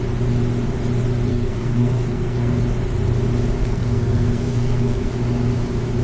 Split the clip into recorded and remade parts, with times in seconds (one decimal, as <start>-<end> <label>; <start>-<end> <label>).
0.0-1.3 recorded; 1.3-2.6 remade; 2.6-3.6 recorded; 3.6-5.1 remade; 5.1-6.0 recorded